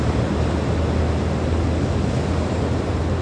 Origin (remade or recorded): recorded